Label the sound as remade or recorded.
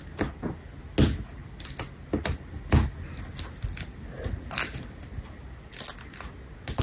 recorded